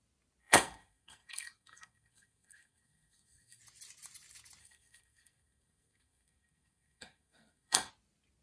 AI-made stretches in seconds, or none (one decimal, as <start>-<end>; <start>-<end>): 0.4-3.6; 4.6-7.9